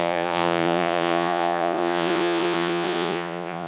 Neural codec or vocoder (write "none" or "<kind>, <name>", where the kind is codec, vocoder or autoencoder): vocoder, Vocos